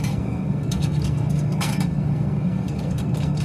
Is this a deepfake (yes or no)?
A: yes